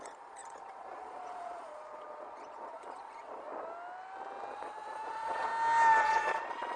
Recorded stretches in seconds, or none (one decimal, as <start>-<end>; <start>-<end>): 3.5-4.5; 5.5-6.0